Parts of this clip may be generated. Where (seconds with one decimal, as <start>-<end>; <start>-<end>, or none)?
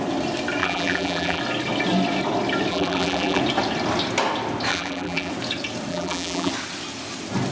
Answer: 0.6-1.4; 2.7-3.4; 4.7-5.3; 5.9-6.5